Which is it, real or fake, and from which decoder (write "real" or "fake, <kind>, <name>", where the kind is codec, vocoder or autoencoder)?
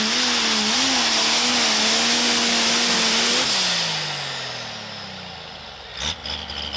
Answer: real